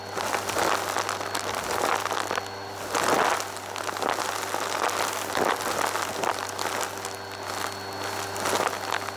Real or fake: real